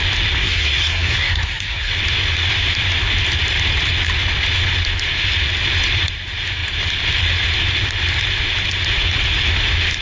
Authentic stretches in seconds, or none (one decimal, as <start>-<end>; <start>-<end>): 0.0-0.4; 1.9-10.0